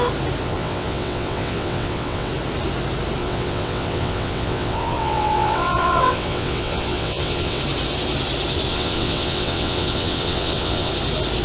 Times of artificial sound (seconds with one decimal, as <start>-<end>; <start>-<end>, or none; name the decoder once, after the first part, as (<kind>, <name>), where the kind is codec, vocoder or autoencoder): 0.4-2.3 (vocoder, WaveNeXt); 3.2-7.6; 8.7-10.9